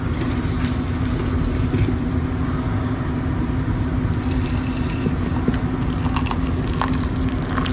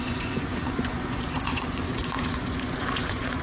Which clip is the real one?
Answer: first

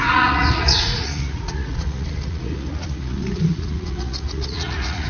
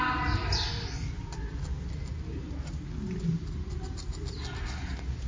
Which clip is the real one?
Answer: second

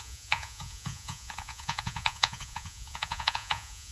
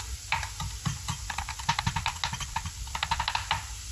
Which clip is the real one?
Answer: second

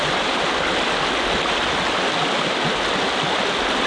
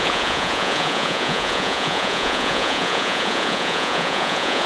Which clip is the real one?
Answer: first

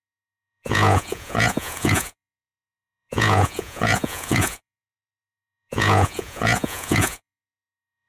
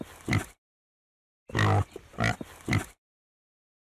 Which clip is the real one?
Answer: second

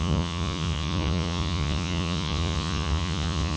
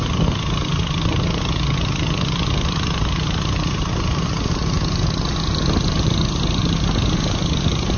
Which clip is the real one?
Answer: second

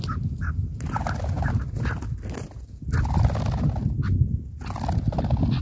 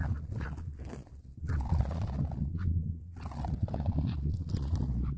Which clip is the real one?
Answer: first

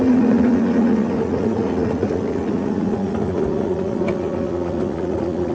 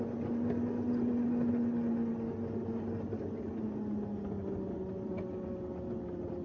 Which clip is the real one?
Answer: second